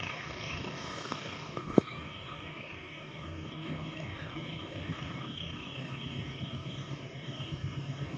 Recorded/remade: remade